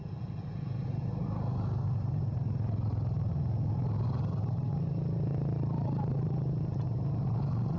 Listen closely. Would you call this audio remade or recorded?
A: recorded